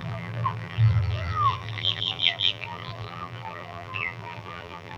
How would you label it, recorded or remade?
remade